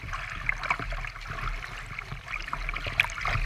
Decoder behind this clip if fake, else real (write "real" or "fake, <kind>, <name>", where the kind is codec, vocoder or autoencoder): real